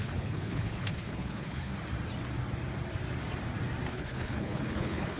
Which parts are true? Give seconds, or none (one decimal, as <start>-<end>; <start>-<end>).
1.7-3.9